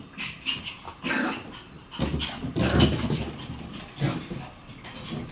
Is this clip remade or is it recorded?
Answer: recorded